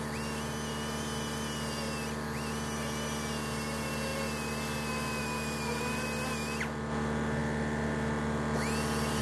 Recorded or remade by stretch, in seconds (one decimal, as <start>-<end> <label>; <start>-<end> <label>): 0.0-9.2 recorded